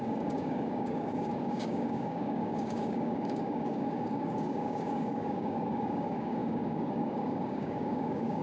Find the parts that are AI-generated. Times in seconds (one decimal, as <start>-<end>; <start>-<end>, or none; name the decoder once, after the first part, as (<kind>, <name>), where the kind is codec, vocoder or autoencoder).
0.0-8.4 (codec, DAC)

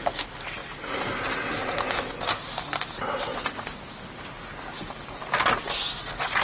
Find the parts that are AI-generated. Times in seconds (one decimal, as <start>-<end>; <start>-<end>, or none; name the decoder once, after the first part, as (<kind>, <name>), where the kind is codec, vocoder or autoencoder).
none

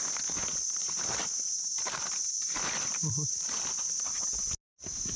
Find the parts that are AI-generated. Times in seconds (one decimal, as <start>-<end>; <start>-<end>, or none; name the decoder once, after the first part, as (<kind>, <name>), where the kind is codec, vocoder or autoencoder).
0.5-1.2 (vocoder, BigVGAN v2); 2.9-3.6

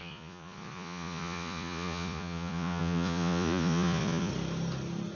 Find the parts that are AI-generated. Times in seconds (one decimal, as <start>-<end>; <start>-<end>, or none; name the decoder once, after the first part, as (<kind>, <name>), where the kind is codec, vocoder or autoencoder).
0.0-4.3 (vocoder, Vocos)

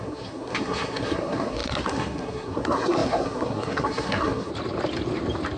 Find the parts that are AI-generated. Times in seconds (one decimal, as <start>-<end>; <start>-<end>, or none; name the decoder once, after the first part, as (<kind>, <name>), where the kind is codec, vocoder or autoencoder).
0.0-4.5 (codec, SNAC)

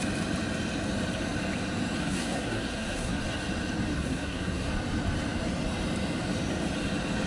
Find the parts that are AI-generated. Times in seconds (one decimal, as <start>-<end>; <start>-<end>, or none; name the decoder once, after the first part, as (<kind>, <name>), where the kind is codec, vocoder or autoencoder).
2.0-3.2 (codec, SNAC); 3.9-4.7